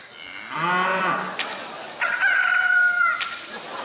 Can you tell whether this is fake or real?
real